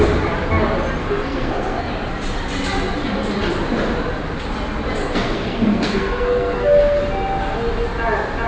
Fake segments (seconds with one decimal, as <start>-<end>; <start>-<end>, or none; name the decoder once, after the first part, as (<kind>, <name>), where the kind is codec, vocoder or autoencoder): 1.0-1.9 (codec, SNAC); 5.0-7.0